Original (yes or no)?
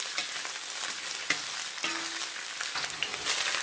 yes